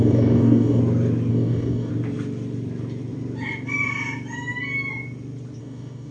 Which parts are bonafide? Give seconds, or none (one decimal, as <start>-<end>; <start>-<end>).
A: 0.8-1.3; 1.9-5.6